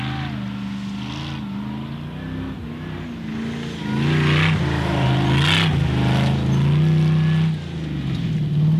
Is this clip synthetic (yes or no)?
no